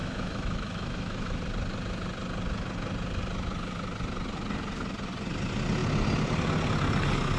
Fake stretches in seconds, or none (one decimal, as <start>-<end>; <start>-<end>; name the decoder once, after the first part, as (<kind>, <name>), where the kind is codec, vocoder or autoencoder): 0.0-1.4 (autoencoder, DAC-VAE)